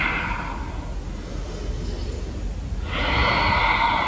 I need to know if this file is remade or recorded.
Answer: recorded